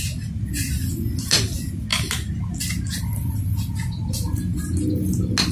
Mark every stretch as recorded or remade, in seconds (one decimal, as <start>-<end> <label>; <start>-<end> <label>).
0.0-5.5 recorded